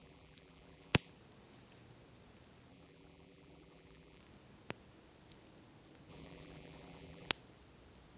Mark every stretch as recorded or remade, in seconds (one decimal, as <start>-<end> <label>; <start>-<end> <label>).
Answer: 0.0-1.1 remade; 1.1-2.7 recorded; 2.7-4.2 remade; 4.2-6.1 recorded; 6.1-7.3 remade; 7.3-8.2 recorded